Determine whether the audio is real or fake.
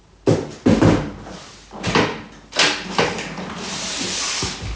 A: real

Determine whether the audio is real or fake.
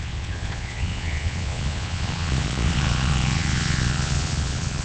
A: fake